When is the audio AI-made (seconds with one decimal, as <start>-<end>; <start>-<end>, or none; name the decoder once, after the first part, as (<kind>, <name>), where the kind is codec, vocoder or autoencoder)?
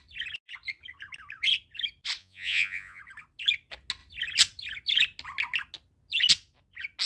2.2-3.0 (vocoder, Vocos)